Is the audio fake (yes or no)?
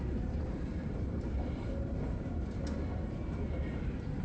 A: yes